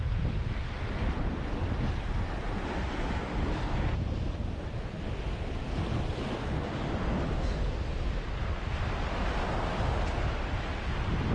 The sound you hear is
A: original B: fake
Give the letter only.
A